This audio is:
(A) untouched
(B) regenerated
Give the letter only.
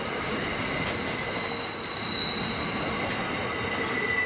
A